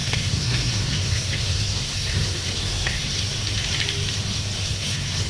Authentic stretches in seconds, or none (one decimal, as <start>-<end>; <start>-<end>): 3.2-4.6